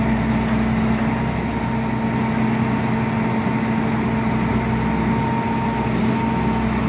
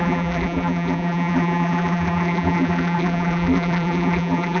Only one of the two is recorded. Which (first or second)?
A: first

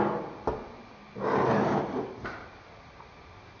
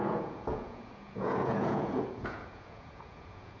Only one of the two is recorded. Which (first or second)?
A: first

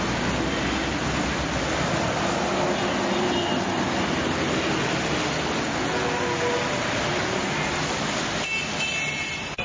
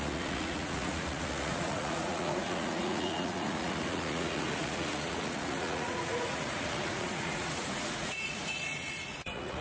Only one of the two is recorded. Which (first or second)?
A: first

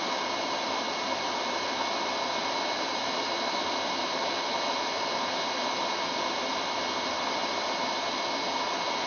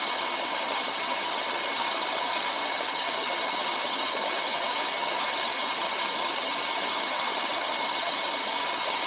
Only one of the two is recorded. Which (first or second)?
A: first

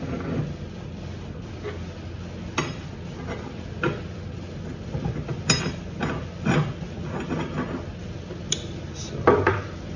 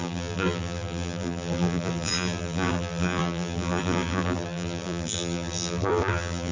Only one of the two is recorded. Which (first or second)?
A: first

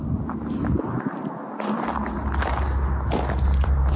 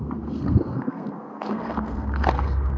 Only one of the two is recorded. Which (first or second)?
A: first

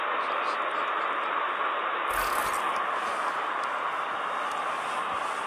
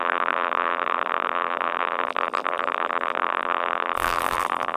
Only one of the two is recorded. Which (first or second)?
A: first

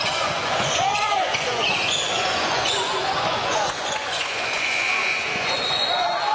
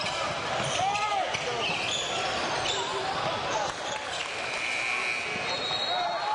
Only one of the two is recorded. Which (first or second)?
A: second